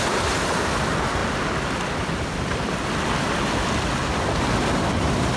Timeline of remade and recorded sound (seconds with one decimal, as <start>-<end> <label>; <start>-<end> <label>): 0.0-5.4 recorded